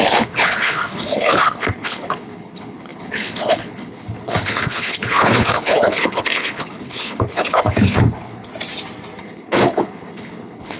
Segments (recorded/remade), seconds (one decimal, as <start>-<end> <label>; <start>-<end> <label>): 0.0-8.5 remade; 8.5-9.2 recorded; 9.2-10.8 remade